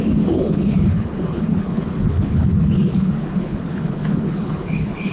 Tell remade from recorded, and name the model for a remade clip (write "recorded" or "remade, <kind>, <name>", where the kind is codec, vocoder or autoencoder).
remade, codec, HILCodec